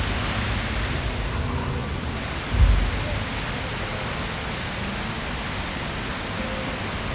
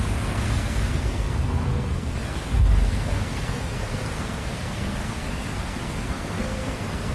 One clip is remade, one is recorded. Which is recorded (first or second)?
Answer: first